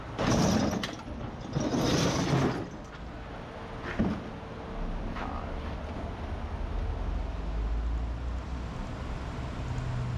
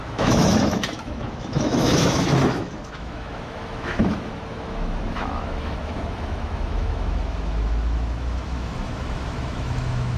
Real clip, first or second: first